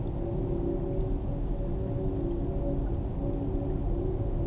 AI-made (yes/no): no